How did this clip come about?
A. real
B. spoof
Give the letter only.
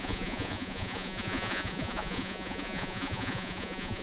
B